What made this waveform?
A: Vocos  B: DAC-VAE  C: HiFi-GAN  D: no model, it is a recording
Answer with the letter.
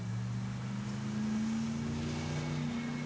D